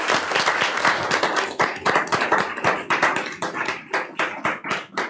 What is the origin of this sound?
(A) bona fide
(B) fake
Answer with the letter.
A